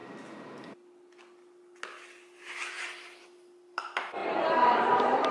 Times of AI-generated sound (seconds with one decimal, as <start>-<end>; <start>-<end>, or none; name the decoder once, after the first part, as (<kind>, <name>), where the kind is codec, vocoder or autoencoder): 4.2-5.3 (vocoder, BigVGAN v2)